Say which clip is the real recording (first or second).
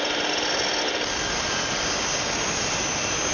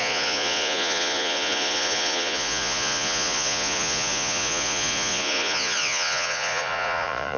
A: first